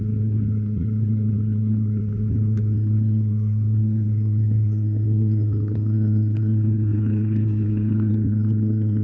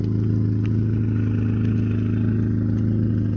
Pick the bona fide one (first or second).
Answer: second